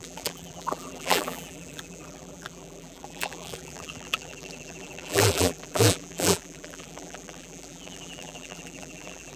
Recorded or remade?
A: remade